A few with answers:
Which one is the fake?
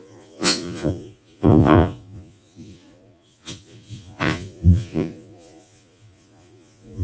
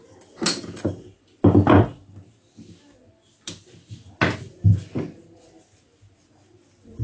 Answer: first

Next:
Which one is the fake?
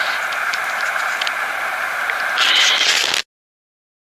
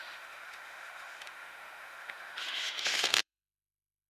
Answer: second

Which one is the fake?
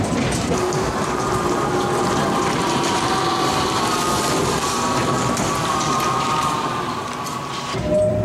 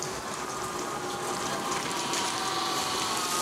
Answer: first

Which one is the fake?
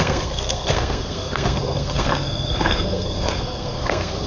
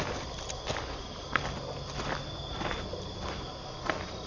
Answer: first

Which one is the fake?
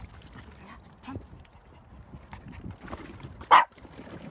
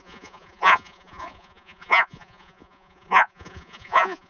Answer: second